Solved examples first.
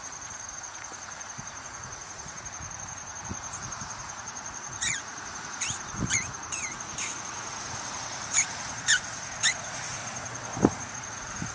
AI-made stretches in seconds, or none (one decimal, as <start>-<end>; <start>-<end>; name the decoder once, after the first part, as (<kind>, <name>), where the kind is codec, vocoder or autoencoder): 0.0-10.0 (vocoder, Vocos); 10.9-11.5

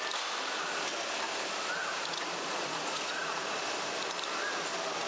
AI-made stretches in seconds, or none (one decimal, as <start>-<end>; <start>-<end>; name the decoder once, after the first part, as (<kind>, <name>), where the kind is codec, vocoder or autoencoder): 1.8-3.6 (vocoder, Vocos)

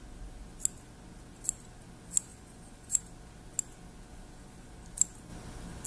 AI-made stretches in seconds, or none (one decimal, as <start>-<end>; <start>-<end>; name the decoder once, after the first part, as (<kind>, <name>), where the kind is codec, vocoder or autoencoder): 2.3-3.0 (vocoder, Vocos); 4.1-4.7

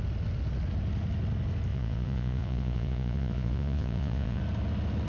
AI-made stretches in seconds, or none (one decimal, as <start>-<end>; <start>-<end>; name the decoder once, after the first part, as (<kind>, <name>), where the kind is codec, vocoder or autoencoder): 1.7-4.4 (vocoder, Vocos)

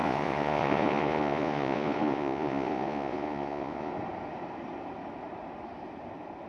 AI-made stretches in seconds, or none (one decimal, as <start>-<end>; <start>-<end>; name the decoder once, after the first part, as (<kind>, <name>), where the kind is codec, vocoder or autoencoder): 0.0-3.9 (vocoder, Vocos)

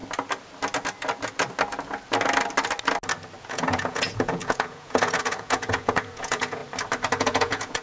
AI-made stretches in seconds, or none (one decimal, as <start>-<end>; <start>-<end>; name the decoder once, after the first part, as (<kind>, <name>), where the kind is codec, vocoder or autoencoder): 3.4-6.6 (vocoder, Vocos); 7.2-7.8